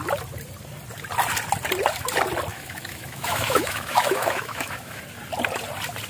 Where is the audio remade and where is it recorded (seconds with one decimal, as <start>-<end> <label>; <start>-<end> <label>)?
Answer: 0.0-2.5 recorded; 2.5-5.0 remade; 5.0-6.1 recorded